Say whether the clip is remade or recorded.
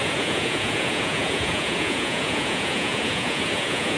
remade